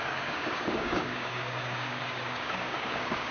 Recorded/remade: remade